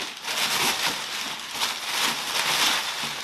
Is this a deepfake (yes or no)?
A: no